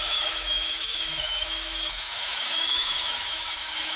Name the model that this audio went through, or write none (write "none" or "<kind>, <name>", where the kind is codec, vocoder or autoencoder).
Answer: autoencoder, DAC-VAE